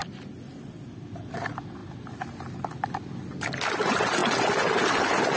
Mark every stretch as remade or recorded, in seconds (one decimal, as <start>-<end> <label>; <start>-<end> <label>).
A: 0.0-5.4 recorded